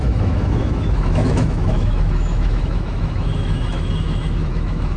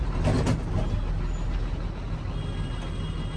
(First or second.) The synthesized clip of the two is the first